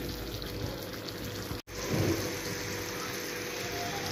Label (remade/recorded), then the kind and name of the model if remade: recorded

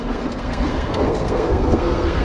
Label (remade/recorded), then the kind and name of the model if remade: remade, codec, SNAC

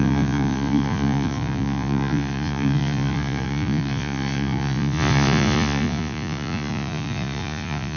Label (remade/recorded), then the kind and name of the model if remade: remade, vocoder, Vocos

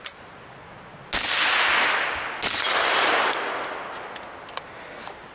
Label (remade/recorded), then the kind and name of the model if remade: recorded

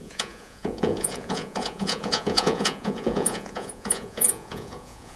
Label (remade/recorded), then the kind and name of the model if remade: remade, vocoder, Vocos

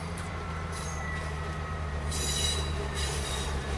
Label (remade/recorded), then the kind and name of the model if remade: remade, vocoder, BigVGAN v2